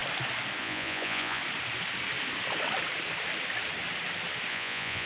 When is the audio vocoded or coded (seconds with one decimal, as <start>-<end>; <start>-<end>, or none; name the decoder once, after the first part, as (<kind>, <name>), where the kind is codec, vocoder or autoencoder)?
0.6-1.4 (vocoder, Vocos); 4.5-5.1